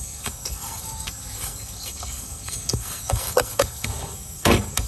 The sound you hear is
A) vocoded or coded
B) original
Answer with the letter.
A